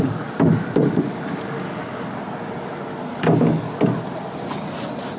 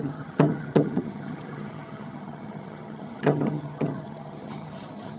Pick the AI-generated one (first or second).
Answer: second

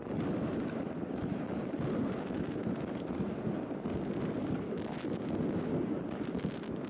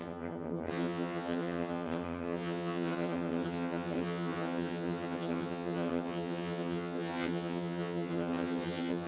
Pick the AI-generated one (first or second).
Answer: second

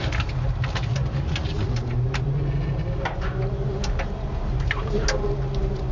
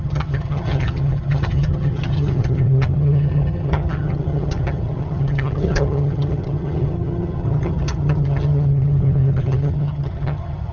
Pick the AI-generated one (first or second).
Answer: second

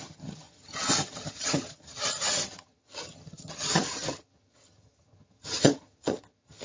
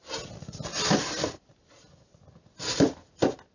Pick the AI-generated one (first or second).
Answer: first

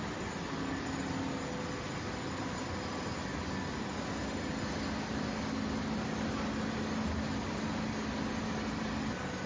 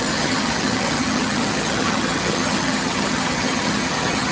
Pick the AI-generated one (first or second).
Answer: second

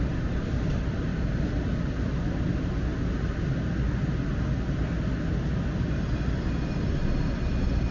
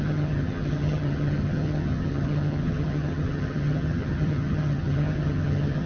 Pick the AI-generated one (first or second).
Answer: second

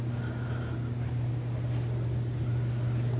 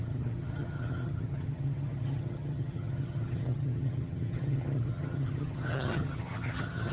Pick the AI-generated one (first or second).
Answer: second